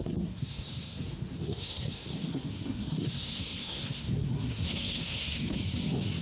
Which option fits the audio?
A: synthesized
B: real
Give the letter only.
A